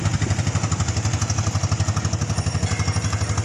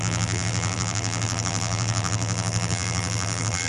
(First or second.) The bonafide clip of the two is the first